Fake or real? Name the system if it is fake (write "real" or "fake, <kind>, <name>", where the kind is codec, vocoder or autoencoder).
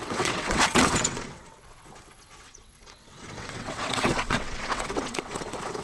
fake, vocoder, WaveNeXt